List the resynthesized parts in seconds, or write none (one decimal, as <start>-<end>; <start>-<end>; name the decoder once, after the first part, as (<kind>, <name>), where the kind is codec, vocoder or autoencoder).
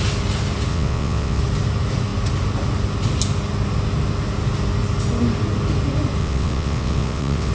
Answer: 0.7-1.4 (vocoder, WaveNeXt); 6.2-7.5